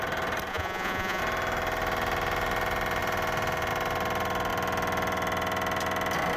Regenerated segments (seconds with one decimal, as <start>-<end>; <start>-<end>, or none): 0.5-1.2